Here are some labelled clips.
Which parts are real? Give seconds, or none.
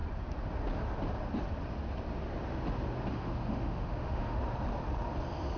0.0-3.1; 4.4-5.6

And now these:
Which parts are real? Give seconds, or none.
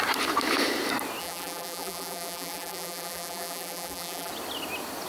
0.0-1.2; 4.3-5.1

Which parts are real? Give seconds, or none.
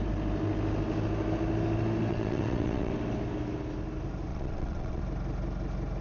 0.0-2.1; 2.9-4.3; 5.0-6.0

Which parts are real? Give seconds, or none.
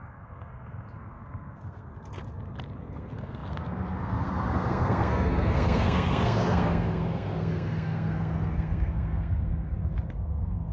1.9-2.8; 9.5-10.1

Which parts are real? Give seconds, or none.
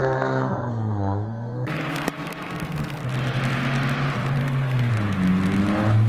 3.0-4.4; 4.9-6.1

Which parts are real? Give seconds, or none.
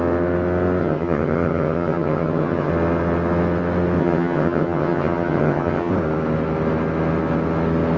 0.0-0.8; 2.7-4.0; 5.9-8.0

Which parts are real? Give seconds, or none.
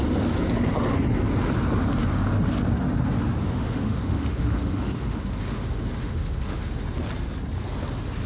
0.0-3.4; 6.7-8.3